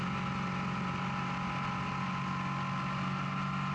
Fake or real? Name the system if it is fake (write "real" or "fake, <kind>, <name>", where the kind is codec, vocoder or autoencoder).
real